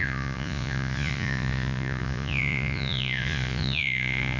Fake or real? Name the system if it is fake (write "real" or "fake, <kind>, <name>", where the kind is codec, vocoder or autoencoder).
fake, vocoder, Vocos